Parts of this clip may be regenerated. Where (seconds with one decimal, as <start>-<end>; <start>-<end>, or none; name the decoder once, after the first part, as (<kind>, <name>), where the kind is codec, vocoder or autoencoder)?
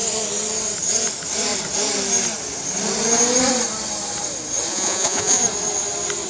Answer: 4.7-5.4 (vocoder, Vocos)